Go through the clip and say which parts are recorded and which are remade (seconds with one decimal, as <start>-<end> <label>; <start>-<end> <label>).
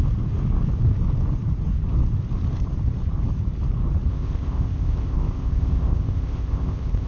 0.0-4.1 recorded; 4.1-7.1 remade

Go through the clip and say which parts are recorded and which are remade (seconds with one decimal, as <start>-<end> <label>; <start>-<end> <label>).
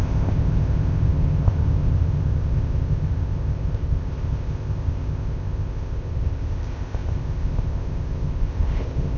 0.0-9.2 remade